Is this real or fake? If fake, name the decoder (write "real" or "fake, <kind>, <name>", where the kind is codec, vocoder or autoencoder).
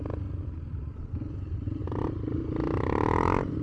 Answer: real